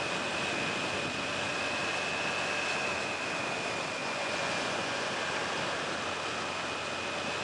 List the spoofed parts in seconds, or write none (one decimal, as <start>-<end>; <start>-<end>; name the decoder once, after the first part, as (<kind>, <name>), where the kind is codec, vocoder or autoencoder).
4.0-5.1 (vocoder, Vocos)